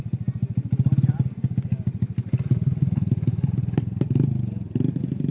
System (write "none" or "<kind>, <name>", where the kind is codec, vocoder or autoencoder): none